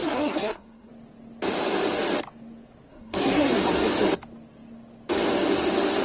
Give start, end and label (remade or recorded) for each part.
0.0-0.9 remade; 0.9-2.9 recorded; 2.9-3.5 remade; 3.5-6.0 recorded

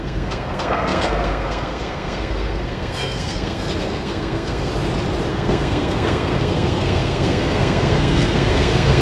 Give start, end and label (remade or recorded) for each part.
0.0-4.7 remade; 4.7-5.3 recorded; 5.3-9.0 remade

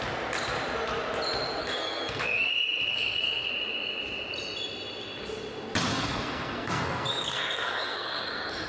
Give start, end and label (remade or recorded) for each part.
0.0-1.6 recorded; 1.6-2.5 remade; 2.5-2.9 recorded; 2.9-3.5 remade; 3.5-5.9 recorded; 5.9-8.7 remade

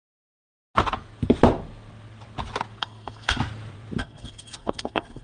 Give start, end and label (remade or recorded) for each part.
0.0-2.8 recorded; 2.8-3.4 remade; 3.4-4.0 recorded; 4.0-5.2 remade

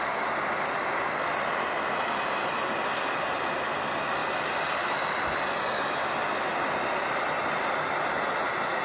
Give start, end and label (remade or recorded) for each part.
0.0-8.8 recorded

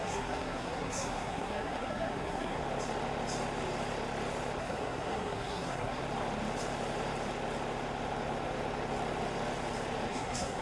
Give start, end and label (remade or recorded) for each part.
0.0-2.6 remade; 2.6-4.6 recorded; 4.6-6.0 remade; 6.0-10.1 recorded; 10.1-10.6 remade